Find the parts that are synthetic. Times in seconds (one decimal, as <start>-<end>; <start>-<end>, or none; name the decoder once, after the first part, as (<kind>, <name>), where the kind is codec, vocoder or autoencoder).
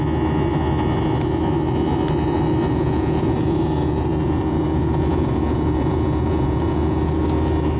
2.7-7.2 (vocoder, Vocos)